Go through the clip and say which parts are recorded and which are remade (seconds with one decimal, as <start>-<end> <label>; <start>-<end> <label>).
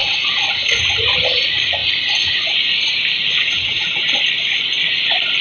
0.0-0.8 remade; 0.8-3.3 recorded; 3.3-4.0 remade; 4.0-5.4 recorded